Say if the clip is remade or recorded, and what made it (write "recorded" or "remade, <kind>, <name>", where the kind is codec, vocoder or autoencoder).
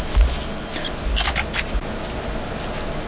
recorded